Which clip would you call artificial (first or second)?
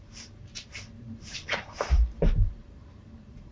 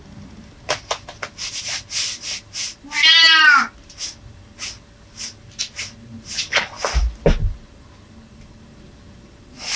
first